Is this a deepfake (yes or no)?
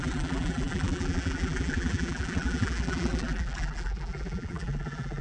yes